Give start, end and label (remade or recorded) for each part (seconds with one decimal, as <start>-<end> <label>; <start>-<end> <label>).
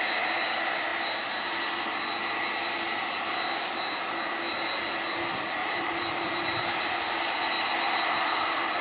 0.0-5.6 recorded; 5.6-6.8 remade; 6.8-8.8 recorded